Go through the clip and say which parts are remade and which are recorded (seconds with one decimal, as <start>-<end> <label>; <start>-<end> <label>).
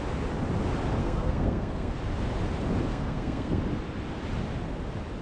0.0-1.0 recorded; 1.0-1.9 remade; 1.9-2.9 recorded; 2.9-3.6 remade; 3.6-5.2 recorded